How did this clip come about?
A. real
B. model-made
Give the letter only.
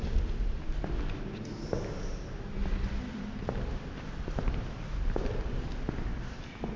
A